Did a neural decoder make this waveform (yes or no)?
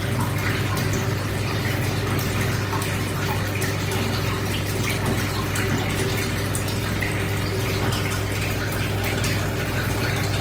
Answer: no